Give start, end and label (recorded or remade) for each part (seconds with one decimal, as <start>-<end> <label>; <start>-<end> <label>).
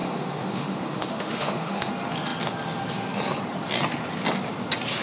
0.0-1.9 remade; 1.9-5.0 recorded